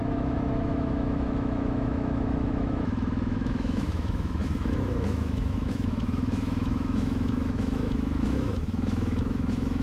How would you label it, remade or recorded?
remade